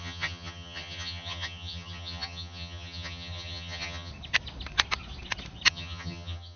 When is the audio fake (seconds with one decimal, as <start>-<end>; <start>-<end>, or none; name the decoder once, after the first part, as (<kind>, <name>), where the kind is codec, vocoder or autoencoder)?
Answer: 0.0-4.1 (vocoder, HiFi-GAN); 5.7-6.6